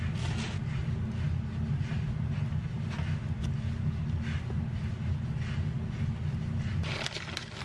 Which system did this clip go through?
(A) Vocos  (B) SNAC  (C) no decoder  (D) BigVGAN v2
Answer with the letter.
C